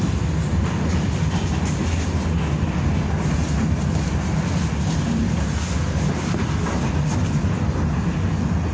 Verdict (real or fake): real